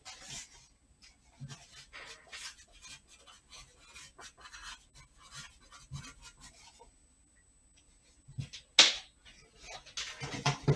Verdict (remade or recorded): recorded